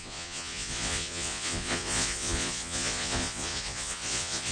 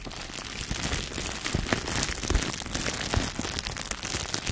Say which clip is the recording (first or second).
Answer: second